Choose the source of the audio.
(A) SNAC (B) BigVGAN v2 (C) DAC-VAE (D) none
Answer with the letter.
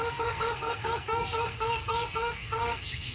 A